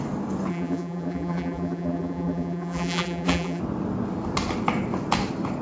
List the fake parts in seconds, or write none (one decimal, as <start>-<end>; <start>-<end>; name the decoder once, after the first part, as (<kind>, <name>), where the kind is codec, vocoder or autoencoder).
0.5-3.6 (vocoder, BigVGAN v2)